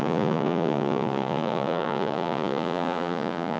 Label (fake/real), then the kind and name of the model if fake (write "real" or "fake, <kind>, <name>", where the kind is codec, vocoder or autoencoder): fake, vocoder, Vocos